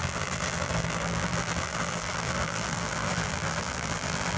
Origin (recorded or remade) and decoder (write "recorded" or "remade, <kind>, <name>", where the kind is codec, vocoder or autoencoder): remade, vocoder, BigVGAN v2